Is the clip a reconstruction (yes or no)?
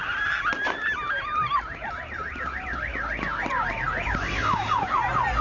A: no